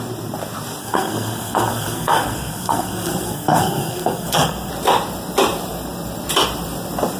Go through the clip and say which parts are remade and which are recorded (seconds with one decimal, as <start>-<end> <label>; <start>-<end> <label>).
0.0-0.8 recorded; 0.8-4.7 remade; 4.7-7.2 recorded